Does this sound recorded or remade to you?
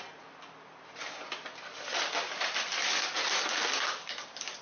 recorded